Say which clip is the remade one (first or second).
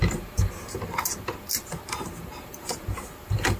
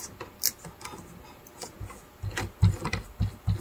first